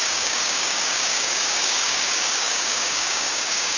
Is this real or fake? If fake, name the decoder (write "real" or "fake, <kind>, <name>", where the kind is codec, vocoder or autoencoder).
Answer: fake, codec, DAC